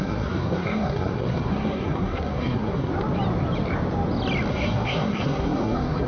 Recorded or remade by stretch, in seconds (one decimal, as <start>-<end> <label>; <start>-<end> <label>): 0.0-2.9 remade; 2.9-4.5 recorded; 4.5-6.1 remade